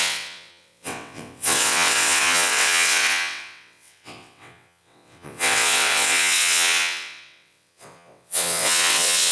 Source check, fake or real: fake